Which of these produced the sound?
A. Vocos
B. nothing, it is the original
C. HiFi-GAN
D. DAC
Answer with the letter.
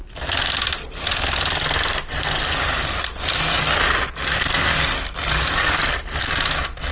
B